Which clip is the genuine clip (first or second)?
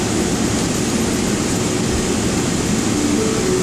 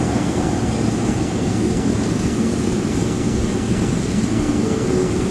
first